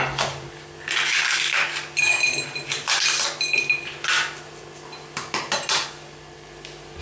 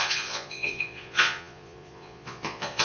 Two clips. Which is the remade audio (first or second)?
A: second